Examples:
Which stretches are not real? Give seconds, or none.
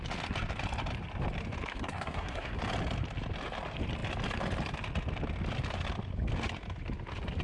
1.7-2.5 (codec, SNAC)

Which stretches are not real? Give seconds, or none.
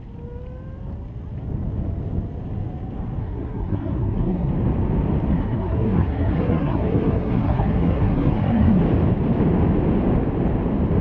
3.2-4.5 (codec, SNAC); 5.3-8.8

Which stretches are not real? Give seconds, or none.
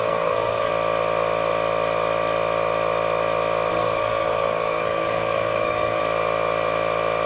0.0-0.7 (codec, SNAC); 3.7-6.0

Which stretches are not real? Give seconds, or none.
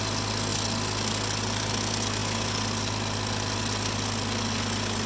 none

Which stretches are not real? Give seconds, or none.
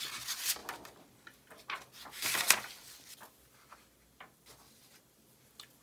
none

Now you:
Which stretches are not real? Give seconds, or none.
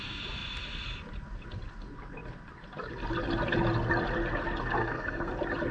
4.8-5.3 (codec, SNAC)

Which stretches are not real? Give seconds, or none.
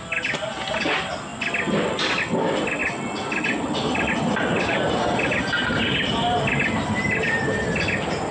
none